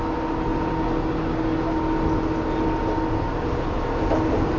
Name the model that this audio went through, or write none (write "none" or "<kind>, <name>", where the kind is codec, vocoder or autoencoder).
none